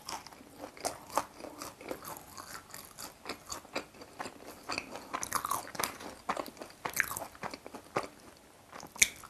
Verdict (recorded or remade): recorded